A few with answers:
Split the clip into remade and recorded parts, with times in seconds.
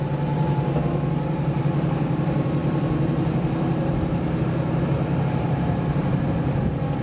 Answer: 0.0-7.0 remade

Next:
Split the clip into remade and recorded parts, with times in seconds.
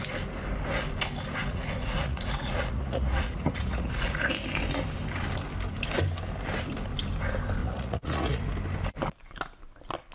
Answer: 0.0-1.4 recorded; 1.4-4.3 remade; 4.3-7.6 recorded; 7.6-8.4 remade; 8.4-10.1 recorded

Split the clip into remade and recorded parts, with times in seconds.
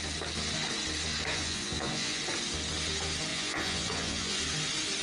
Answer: 0.0-1.3 recorded; 1.3-2.2 remade; 2.2-3.3 recorded; 3.3-4.4 remade; 4.4-5.0 recorded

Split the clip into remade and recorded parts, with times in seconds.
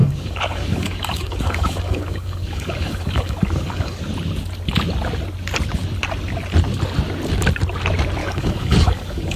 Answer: 0.0-4.0 remade; 4.0-8.2 recorded; 8.2-9.4 remade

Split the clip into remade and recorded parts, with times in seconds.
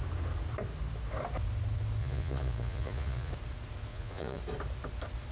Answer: 0.0-2.0 recorded; 2.0-3.3 remade; 3.3-3.9 recorded; 3.9-4.4 remade; 4.4-5.3 recorded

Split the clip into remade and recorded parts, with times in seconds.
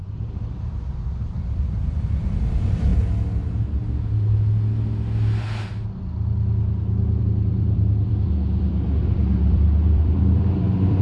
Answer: 0.0-2.9 remade; 2.9-7.2 recorded; 7.2-11.0 remade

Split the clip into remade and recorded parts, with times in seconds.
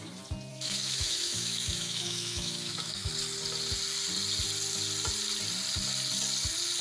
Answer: 0.0-0.5 recorded; 0.5-3.1 remade; 3.1-6.8 recorded